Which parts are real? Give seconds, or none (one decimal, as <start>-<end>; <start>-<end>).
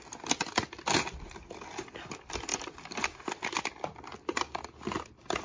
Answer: 0.0-5.4